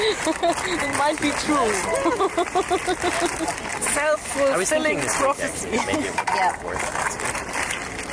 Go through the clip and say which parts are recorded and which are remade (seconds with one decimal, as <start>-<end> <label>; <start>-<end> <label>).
0.0-8.1 recorded

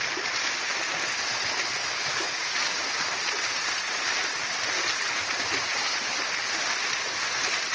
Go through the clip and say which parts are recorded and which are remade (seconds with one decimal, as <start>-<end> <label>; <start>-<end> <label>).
0.0-1.8 recorded; 1.8-2.5 remade; 2.5-7.7 recorded

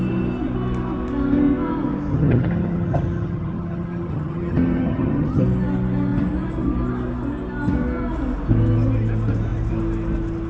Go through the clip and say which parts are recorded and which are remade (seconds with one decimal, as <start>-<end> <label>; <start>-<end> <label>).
0.0-2.1 recorded; 2.1-5.4 remade; 5.4-10.5 recorded

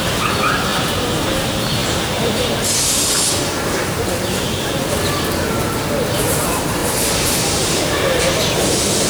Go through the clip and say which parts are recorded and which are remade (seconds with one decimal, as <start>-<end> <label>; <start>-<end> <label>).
0.0-0.7 recorded; 0.7-1.2 remade; 1.2-1.8 recorded; 1.8-2.5 remade; 2.5-6.8 recorded; 6.8-8.2 remade; 8.2-9.1 recorded

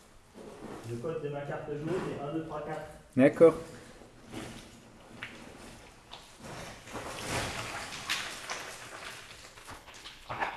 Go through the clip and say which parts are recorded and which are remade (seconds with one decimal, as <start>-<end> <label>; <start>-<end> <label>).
0.0-9.6 recorded; 9.6-10.6 remade

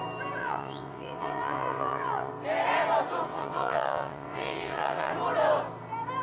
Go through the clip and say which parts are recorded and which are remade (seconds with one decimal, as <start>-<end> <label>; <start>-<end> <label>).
0.0-0.4 recorded; 0.4-2.3 remade; 2.3-3.3 recorded; 3.3-5.1 remade; 5.1-6.2 recorded

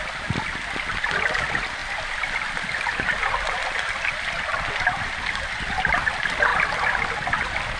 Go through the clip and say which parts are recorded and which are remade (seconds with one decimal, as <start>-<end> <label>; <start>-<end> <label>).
0.0-1.8 remade; 1.8-5.8 recorded; 5.8-6.5 remade; 6.5-7.8 recorded